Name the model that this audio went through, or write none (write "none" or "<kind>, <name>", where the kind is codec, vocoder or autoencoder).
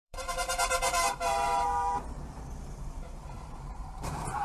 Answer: vocoder, BigVGAN v2